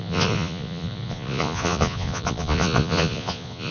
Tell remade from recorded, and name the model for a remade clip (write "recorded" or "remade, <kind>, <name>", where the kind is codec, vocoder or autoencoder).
remade, vocoder, Vocos